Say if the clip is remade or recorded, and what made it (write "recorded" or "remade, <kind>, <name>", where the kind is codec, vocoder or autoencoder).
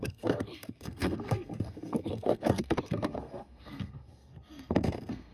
remade, codec, SNAC